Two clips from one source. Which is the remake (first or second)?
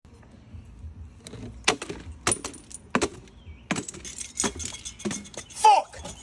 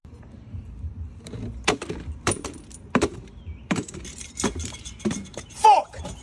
second